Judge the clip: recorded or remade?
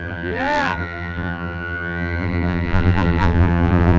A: remade